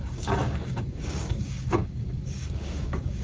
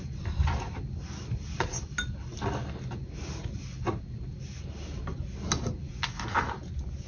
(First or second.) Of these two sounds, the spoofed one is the first